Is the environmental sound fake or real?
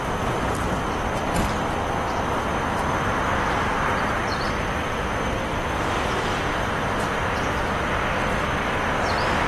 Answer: fake